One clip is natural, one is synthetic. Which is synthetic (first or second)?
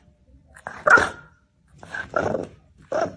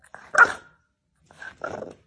first